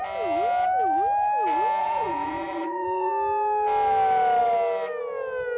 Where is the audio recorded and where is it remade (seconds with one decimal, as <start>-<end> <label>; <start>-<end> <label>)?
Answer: 0.0-1.8 recorded; 1.8-3.1 remade; 3.1-5.6 recorded